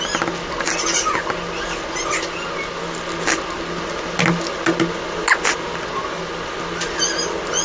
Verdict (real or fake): real